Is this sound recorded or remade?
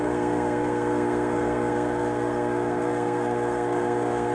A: remade